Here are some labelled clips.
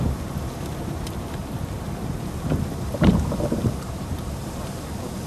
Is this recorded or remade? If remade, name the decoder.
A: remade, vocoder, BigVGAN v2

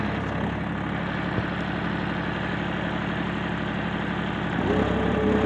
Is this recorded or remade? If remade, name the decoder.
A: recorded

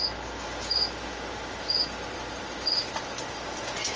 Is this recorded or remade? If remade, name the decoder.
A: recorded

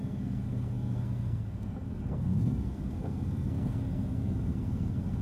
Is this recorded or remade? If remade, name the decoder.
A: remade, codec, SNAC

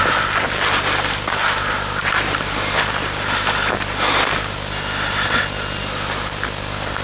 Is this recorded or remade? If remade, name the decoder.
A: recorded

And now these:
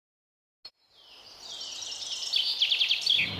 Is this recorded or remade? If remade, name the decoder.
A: recorded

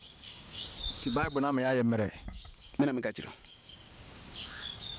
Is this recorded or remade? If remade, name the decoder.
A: remade, codec, DAC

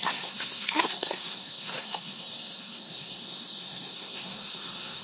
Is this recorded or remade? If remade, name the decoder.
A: remade, codec, SNAC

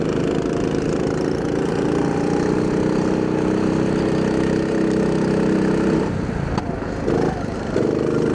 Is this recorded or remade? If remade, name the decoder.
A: recorded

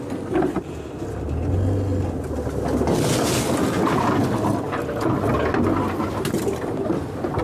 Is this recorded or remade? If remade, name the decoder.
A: recorded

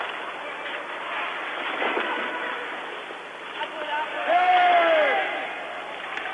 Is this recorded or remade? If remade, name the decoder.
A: recorded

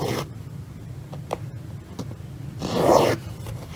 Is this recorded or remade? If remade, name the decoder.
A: recorded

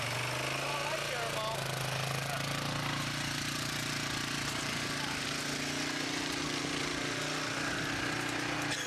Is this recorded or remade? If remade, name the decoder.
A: recorded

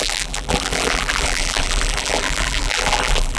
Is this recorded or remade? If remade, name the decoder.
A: remade, vocoder, BigVGAN v2